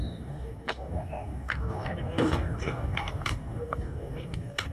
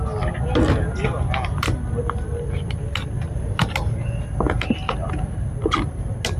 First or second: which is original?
second